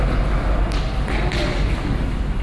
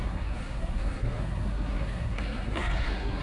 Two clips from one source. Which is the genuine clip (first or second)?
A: first